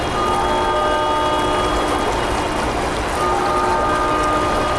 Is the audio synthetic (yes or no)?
no